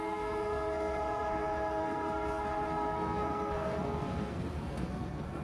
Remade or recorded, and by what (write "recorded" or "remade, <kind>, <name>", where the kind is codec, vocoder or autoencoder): remade, codec, SNAC